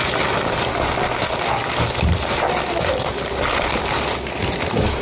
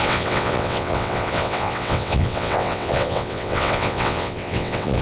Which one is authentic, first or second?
first